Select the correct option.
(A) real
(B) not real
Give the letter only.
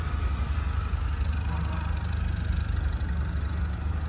A